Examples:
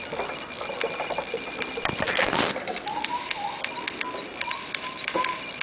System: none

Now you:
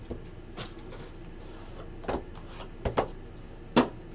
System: none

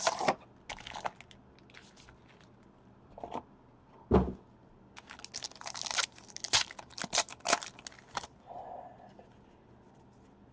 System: none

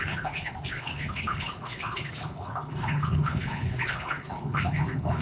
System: codec, HILCodec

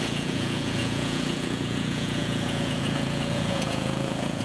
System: vocoder, Vocos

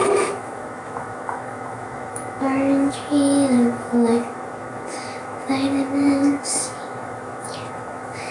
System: autoencoder, DAC-VAE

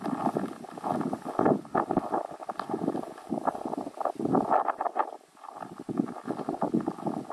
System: none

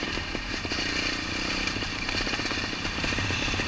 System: vocoder, BigVGAN v2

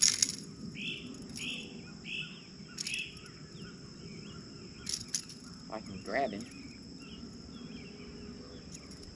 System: none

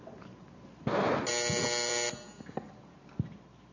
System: none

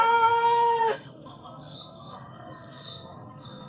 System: codec, SNAC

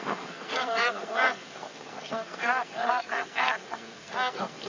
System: codec, SNAC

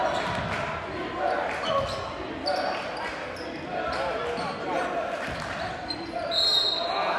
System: none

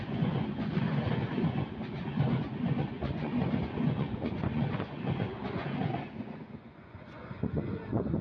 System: vocoder, Vocos